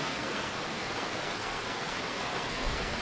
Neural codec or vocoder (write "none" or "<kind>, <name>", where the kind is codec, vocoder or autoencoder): codec, SNAC